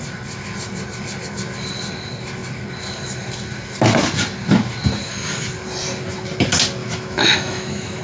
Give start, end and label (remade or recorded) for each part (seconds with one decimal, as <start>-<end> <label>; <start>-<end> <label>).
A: 0.0-6.8 recorded; 6.8-8.0 remade